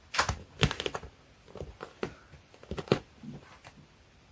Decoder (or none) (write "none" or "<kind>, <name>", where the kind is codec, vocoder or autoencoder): vocoder, BigVGAN v2